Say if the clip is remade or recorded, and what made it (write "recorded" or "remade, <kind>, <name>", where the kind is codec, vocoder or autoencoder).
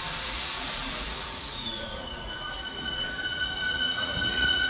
remade, vocoder, Vocos